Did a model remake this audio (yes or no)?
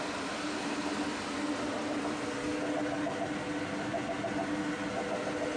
no